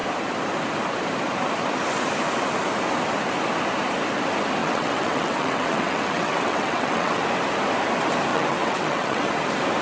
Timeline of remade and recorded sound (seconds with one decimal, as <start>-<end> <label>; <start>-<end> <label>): 0.0-4.6 recorded; 4.6-7.2 remade; 7.2-8.3 recorded; 8.3-9.3 remade; 9.3-9.8 recorded